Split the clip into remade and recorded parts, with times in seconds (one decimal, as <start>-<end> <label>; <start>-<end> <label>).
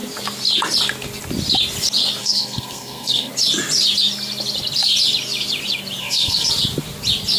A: 0.0-2.2 recorded; 2.2-3.3 remade; 3.3-6.0 recorded; 6.0-6.5 remade; 6.5-7.4 recorded